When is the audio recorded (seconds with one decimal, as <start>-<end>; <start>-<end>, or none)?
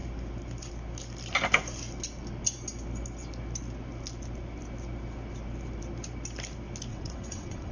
0.0-6.9